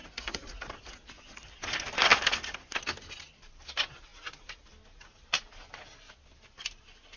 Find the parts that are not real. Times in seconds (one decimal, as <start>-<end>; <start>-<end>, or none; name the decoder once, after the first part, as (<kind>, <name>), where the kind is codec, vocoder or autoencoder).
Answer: 0.0-0.7 (vocoder, Vocos)